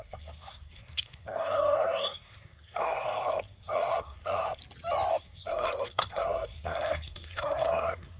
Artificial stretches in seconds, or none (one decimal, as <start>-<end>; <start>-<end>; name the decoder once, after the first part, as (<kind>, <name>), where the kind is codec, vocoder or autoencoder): 0.0-4.6 (codec, SNAC); 5.1-8.2